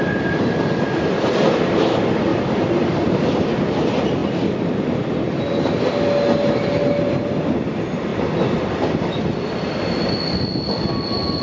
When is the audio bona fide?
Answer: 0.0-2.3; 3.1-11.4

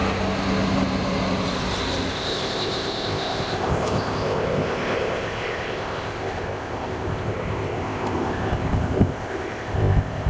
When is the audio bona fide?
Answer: 0.0-2.1

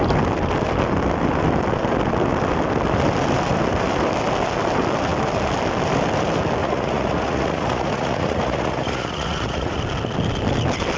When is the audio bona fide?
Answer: 0.0-6.6; 9.8-11.0